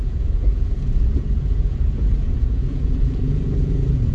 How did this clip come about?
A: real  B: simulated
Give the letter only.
B